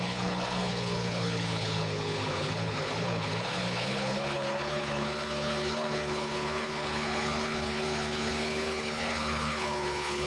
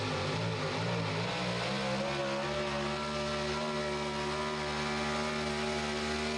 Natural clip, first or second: second